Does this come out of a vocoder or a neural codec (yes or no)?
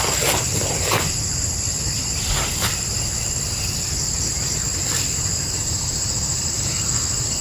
no